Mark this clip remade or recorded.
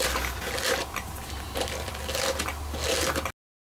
recorded